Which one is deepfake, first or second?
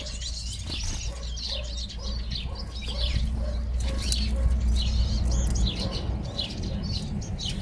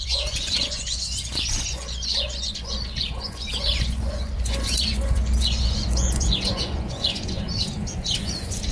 second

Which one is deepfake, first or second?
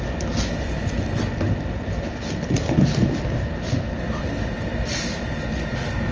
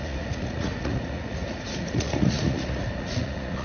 second